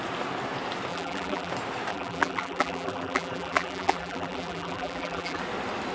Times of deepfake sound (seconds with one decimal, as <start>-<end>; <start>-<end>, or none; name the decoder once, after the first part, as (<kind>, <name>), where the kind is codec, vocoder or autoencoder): 0.9-1.5 (vocoder, BigVGAN v2); 1.9-5.4